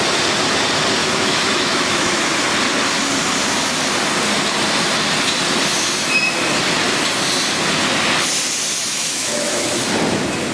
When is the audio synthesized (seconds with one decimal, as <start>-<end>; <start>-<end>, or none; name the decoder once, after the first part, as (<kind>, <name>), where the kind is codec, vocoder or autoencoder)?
1.0-2.2 (autoencoder, DAC-VAE); 8.8-9.8